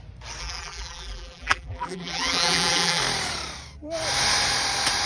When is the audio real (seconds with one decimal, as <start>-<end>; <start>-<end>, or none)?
0.0-0.4; 3.0-5.1